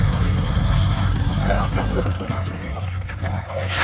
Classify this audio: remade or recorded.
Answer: remade